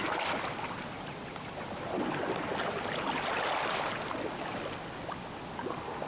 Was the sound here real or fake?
real